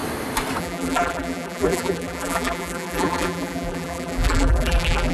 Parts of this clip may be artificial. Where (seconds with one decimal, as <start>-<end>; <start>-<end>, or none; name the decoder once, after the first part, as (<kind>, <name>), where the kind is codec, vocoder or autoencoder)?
0.6-5.1 (vocoder, BigVGAN v2)